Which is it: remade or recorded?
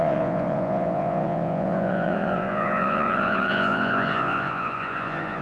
remade